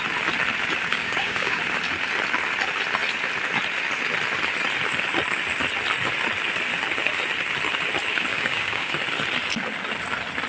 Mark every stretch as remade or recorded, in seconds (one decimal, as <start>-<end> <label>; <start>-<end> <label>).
0.0-0.9 recorded; 0.9-1.6 remade; 1.6-8.3 recorded; 8.3-8.9 remade; 8.9-10.5 recorded